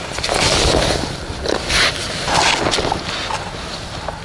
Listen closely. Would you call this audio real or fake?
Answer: real